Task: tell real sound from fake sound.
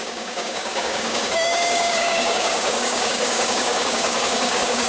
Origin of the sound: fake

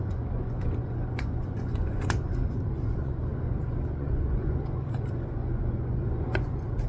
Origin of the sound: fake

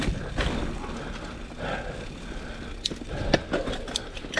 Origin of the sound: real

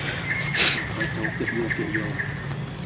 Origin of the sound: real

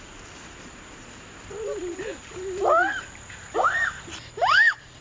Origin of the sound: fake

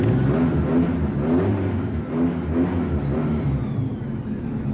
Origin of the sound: real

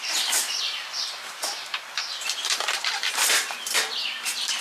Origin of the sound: fake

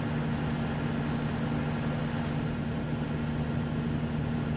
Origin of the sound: real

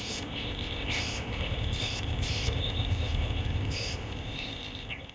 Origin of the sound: fake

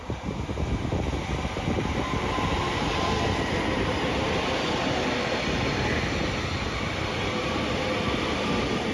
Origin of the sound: real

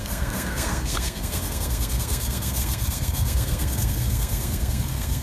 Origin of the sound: fake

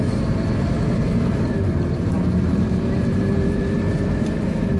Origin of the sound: fake